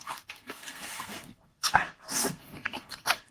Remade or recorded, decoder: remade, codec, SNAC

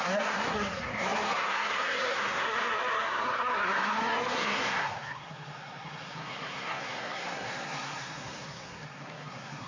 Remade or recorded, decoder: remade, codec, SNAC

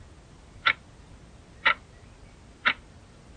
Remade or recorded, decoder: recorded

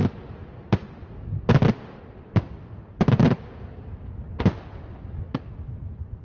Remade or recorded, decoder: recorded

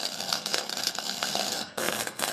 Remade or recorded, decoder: remade, codec, SNAC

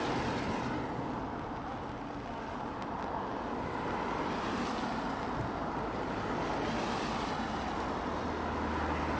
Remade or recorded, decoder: recorded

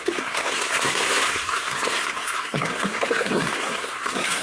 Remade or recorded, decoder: remade, codec, SNAC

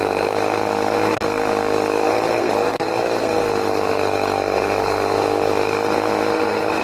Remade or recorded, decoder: remade, codec, SNAC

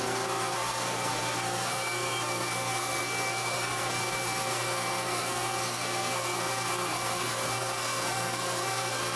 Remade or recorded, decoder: remade, codec, SNAC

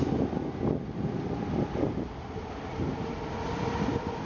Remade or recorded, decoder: recorded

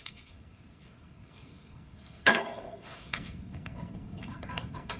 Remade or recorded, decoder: remade, codec, SNAC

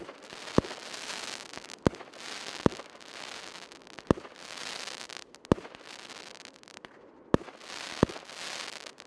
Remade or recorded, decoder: recorded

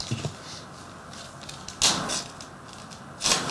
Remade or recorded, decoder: recorded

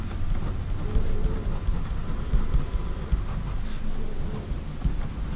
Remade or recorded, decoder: recorded